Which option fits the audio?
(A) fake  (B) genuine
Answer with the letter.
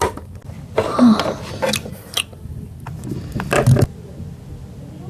B